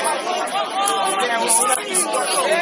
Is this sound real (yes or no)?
yes